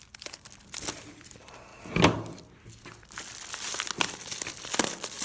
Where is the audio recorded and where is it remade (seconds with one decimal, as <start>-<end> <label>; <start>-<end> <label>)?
0.0-5.2 recorded